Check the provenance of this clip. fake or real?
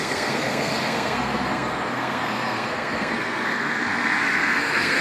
fake